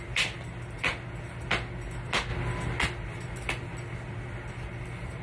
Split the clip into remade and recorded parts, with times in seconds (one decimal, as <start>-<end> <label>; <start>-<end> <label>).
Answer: 0.0-5.2 recorded